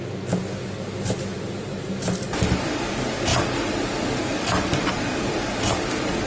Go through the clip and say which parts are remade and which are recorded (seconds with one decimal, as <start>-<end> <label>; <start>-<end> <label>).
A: 0.0-1.3 recorded; 1.3-2.9 remade; 2.9-3.3 recorded; 3.3-5.7 remade; 5.7-6.3 recorded